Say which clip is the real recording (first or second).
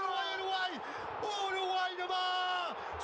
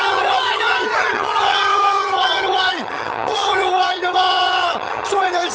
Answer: first